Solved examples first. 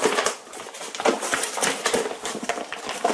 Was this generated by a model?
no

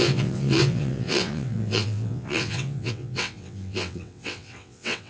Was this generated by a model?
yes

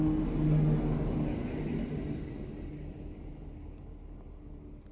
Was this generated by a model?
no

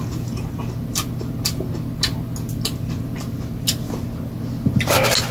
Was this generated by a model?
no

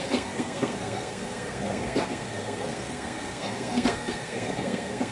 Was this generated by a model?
yes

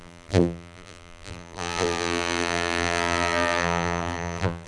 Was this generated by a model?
yes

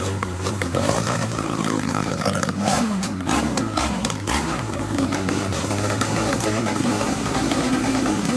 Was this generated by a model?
yes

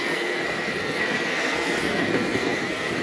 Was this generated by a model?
yes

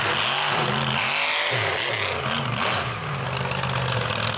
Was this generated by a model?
no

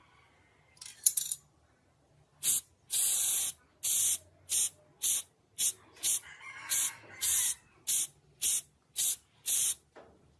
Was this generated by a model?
no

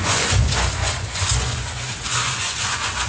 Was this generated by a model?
yes